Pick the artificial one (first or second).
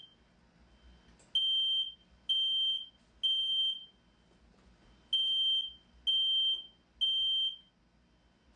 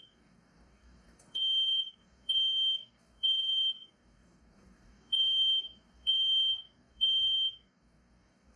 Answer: second